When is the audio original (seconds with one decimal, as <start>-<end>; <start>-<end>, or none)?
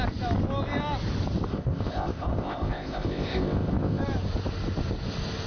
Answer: 0.0-1.5; 4.0-5.5